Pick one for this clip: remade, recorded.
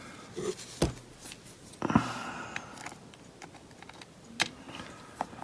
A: recorded